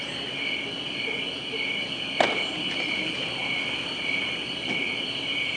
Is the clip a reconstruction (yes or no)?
no